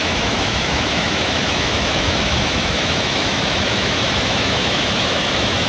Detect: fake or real fake